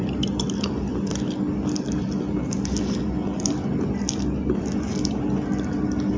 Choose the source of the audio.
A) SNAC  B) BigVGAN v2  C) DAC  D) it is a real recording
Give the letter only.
B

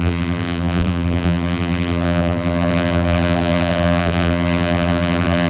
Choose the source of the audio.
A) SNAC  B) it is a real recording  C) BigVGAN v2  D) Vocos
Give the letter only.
C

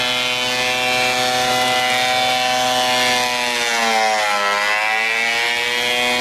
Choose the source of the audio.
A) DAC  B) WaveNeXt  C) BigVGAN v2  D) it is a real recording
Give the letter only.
D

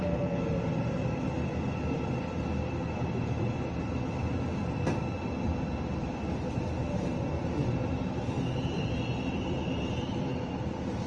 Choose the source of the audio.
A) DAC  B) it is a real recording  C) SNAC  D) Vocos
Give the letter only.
B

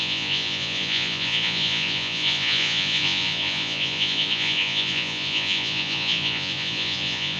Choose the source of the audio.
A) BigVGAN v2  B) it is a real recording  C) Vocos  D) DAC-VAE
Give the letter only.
C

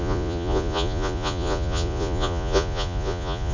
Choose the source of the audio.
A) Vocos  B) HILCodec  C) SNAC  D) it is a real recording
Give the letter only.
A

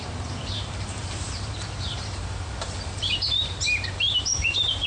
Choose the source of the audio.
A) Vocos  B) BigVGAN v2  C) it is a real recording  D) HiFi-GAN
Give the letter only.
B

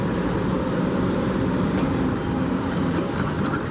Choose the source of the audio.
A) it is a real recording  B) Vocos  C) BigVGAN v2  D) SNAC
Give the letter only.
C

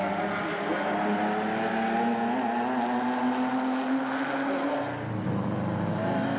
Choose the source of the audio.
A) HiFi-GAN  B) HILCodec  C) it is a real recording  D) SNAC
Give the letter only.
C